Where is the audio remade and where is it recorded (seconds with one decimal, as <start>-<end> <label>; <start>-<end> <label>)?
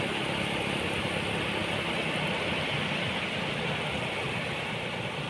0.0-5.3 recorded